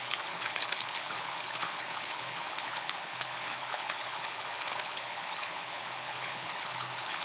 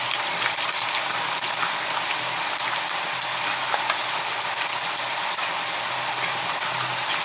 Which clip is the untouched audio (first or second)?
second